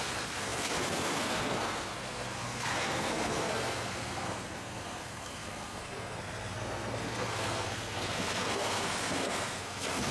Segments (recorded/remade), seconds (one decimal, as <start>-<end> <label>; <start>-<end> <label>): 0.0-10.1 remade